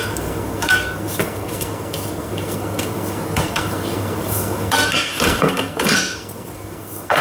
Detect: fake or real fake